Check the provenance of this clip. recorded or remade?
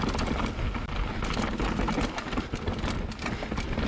recorded